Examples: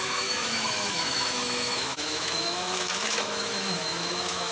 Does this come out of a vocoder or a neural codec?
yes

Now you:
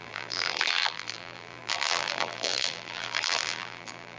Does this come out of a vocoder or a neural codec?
yes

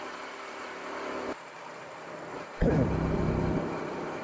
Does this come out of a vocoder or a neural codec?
yes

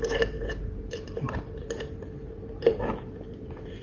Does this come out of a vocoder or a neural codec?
yes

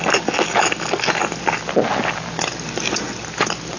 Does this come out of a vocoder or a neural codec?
no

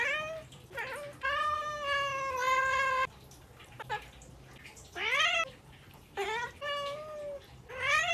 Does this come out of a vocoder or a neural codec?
no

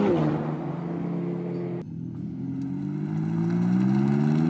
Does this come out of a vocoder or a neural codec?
no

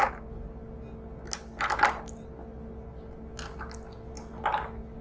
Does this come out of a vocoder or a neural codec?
no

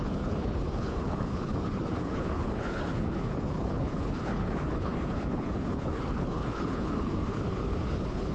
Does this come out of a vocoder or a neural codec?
yes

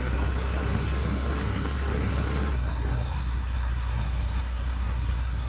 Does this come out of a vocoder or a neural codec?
yes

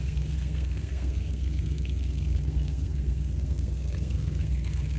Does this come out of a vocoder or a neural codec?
yes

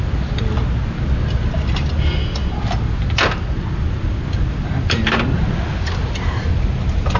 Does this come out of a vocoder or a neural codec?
no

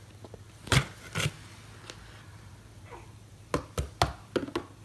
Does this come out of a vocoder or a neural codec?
no